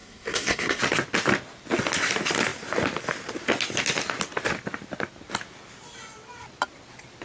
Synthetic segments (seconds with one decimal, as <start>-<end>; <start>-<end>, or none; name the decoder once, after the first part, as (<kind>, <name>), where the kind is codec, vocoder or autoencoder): 0.0-0.8 (codec, SNAC)